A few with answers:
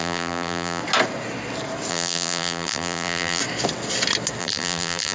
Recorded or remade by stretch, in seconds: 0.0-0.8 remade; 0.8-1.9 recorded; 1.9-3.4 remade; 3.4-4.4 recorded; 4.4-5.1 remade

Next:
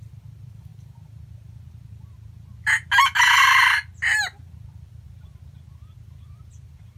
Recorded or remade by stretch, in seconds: 0.0-7.0 recorded

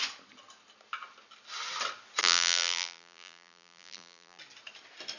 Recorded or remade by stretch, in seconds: 0.0-2.2 recorded; 2.2-4.4 remade; 4.4-5.2 recorded

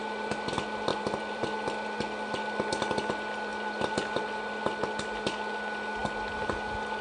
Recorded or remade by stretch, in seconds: 0.0-0.9 recorded; 0.9-1.5 remade; 1.5-7.0 recorded

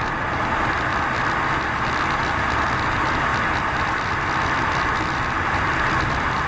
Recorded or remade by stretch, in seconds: 0.0-6.5 recorded

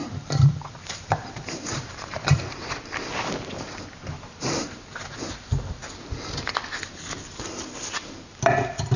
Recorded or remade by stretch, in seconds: 0.0-2.6 remade; 2.6-9.0 recorded